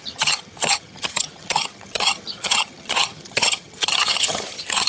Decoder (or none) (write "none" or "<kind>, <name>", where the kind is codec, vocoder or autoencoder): vocoder, HiFi-GAN